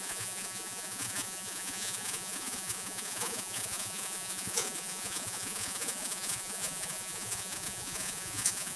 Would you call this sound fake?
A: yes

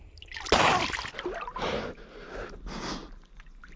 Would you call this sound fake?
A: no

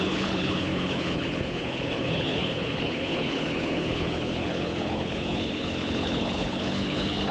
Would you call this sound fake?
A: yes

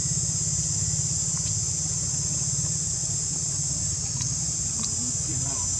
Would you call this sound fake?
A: no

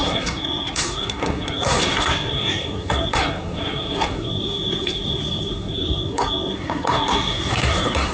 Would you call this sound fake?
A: yes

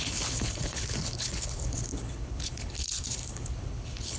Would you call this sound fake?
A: yes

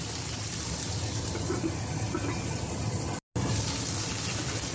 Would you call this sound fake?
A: no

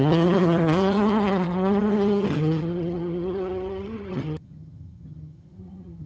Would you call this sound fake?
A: yes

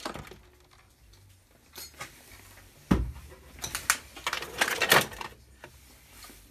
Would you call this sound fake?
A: no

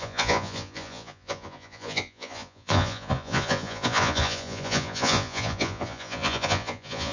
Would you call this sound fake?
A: yes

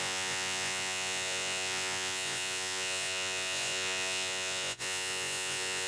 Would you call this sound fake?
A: yes